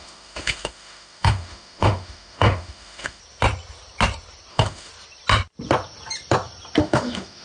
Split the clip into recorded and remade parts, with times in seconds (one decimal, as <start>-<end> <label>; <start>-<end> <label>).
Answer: 0.0-3.2 remade; 3.2-4.5 recorded; 4.5-4.9 remade; 4.9-6.8 recorded; 6.8-7.4 remade